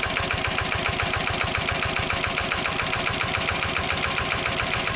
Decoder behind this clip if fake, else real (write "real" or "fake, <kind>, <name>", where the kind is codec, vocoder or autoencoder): real